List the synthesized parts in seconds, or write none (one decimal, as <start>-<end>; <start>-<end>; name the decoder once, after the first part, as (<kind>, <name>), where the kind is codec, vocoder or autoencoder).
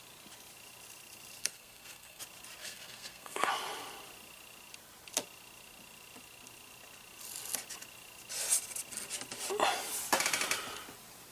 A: 1.4-2.2 (codec, SNAC); 2.6-3.5